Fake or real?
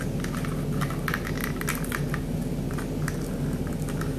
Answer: real